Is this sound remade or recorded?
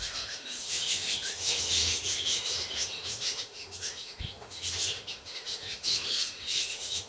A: remade